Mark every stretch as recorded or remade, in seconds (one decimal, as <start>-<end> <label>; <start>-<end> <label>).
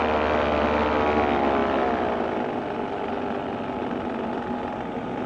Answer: 0.0-5.3 recorded